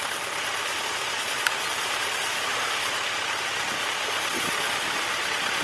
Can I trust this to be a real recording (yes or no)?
no